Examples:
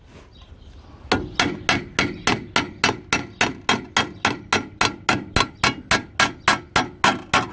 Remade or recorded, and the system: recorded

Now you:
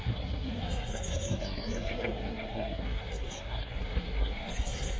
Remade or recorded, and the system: remade, codec, SNAC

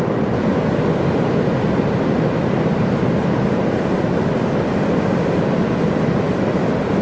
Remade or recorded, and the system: recorded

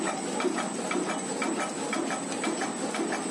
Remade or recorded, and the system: recorded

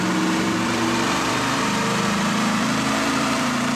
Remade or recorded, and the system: remade, vocoder, BigVGAN v2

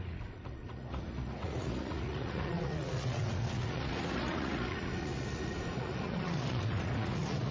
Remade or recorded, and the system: remade, vocoder, Vocos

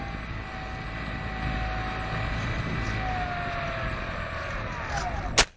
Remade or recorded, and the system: recorded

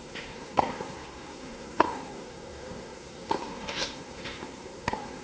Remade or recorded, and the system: remade, codec, SNAC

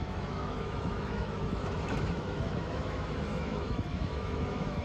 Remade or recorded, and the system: remade, autoencoder, DAC-VAE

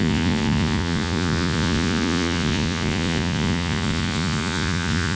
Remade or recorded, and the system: remade, vocoder, Vocos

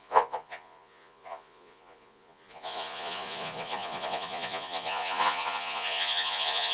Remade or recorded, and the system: remade, vocoder, Vocos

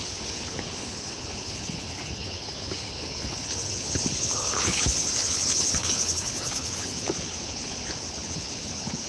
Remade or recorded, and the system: remade, codec, HILCodec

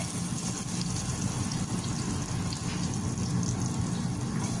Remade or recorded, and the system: recorded